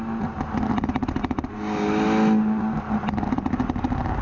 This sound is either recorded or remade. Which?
recorded